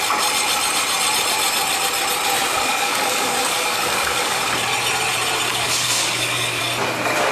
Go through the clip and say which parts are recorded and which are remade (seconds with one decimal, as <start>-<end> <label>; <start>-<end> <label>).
0.0-2.5 recorded; 2.5-4.4 remade; 4.4-5.5 recorded; 5.5-6.6 remade; 6.6-7.3 recorded